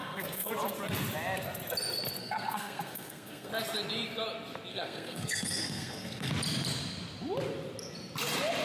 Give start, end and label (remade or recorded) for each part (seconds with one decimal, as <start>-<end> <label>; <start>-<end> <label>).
0.0-0.5 remade; 0.5-2.2 recorded; 2.2-3.5 remade; 3.5-4.7 recorded; 4.7-6.3 remade; 6.3-8.6 recorded